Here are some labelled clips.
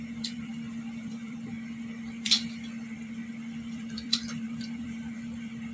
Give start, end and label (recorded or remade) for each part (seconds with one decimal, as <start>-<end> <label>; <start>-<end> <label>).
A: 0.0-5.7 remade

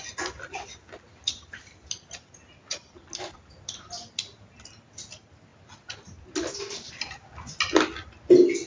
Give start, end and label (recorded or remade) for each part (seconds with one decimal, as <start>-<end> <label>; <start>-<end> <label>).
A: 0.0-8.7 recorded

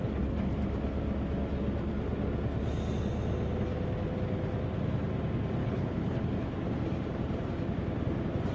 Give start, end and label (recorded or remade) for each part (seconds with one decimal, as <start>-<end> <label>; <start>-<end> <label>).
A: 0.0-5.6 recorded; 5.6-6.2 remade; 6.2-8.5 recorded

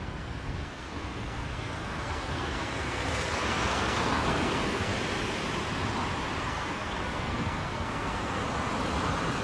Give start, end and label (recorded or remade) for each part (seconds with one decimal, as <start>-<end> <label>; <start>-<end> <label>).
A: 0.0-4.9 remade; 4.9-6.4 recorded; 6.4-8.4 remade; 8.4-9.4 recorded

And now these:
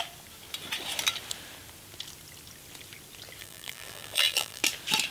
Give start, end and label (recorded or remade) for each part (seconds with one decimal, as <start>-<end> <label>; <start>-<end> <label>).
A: 0.0-3.4 recorded; 3.4-4.6 remade; 4.6-5.1 recorded